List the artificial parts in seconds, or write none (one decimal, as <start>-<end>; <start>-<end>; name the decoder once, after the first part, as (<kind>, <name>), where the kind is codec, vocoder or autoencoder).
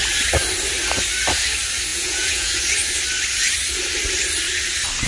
1.9-2.6 (vocoder, Vocos)